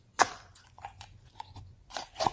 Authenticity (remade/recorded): remade